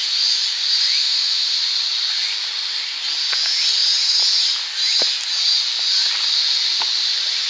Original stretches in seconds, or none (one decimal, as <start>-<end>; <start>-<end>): 0.0-1.0; 1.6-7.5